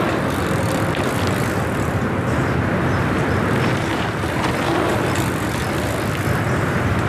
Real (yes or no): no